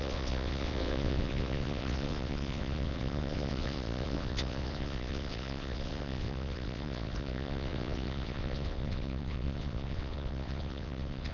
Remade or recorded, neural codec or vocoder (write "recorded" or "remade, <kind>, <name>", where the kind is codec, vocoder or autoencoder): remade, vocoder, WaveNeXt